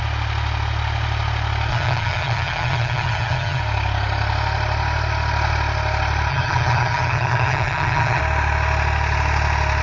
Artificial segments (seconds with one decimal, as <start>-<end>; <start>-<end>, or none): 1.7-3.6; 6.3-8.2